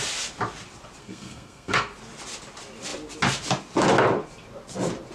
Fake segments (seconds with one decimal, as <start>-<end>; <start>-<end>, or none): 1.0-1.9